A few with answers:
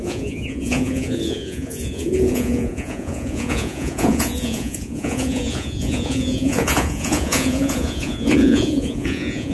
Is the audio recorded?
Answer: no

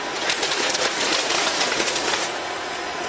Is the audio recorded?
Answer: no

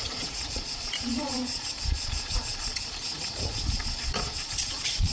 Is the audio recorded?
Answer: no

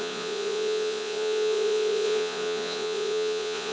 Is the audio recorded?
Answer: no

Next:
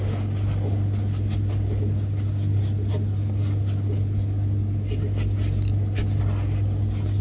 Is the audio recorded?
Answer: yes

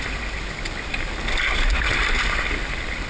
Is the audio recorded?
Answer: yes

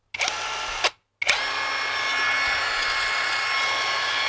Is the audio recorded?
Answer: yes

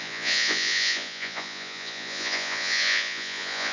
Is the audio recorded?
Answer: no